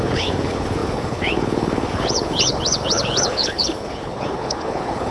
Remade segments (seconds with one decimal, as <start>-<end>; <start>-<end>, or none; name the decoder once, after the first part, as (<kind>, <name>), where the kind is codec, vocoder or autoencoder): 0.0-5.1 (codec, HILCodec)